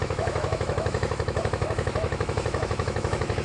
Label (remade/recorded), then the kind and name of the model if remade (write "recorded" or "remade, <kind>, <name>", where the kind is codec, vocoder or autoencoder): remade, autoencoder, DAC-VAE